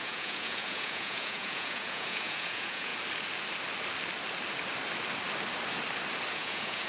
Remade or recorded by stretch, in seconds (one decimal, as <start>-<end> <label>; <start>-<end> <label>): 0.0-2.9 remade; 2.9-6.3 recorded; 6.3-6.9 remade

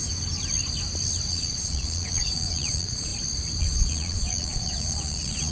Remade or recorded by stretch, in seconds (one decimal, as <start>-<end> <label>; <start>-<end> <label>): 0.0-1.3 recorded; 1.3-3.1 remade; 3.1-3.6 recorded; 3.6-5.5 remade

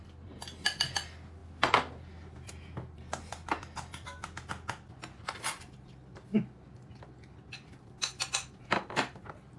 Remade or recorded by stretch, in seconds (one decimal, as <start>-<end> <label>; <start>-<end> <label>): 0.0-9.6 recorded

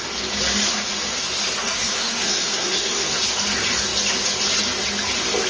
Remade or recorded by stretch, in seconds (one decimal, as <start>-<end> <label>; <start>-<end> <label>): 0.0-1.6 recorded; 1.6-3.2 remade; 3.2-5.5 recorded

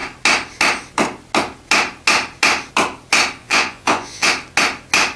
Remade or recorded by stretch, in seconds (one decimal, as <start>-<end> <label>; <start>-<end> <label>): 0.0-3.4 recorded; 3.4-4.3 remade; 4.3-5.2 recorded

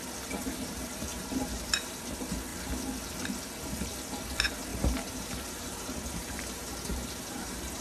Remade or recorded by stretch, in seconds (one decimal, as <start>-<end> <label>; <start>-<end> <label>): 0.0-1.1 recorded; 1.1-2.0 remade; 2.0-4.7 recorded; 4.7-7.8 remade

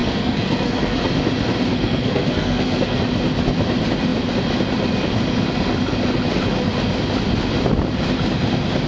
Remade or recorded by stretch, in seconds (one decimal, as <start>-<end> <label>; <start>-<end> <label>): 0.0-1.0 remade; 1.0-1.7 recorded; 1.7-3.0 remade; 3.0-8.9 recorded